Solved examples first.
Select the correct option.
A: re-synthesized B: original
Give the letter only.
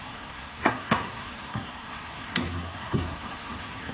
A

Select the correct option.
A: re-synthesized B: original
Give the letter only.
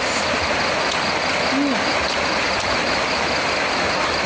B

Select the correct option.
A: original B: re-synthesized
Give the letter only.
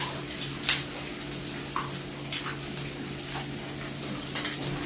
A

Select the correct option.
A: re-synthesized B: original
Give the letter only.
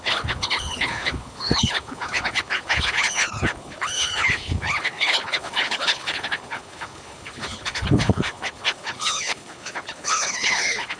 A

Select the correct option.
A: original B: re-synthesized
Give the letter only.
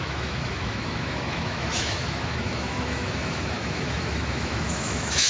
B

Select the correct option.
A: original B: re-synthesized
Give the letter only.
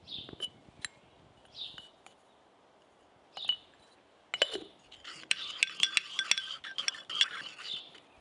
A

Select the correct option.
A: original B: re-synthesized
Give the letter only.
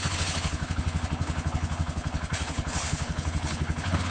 B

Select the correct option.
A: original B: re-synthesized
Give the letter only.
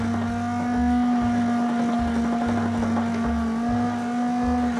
A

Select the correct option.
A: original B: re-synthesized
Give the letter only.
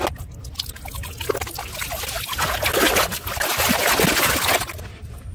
A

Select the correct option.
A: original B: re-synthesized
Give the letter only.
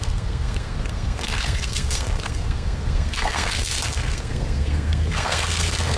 B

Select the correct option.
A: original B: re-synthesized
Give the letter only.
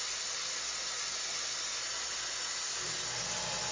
A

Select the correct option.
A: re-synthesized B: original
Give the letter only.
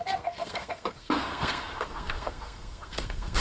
A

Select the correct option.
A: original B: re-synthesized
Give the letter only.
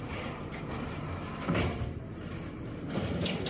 A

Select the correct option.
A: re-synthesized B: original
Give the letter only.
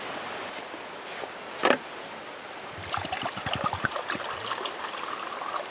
B